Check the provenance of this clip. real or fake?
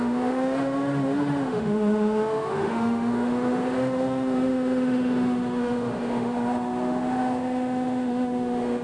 fake